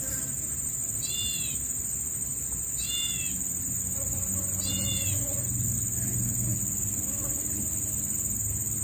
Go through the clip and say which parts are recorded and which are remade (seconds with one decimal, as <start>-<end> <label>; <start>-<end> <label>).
0.0-8.8 recorded